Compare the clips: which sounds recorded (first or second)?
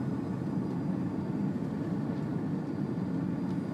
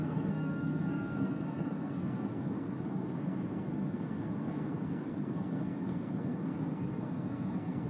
first